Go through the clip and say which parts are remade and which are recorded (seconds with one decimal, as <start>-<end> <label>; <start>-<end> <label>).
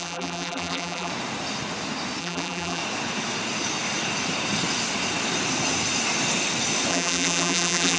0.0-1.1 remade; 1.1-2.2 recorded; 2.2-2.8 remade; 2.8-6.9 recorded; 6.9-8.0 remade